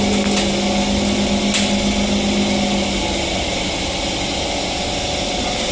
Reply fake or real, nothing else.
real